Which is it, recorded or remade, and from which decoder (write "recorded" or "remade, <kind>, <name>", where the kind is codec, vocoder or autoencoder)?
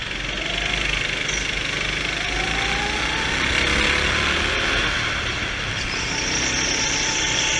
recorded